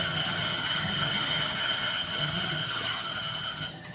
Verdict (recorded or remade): remade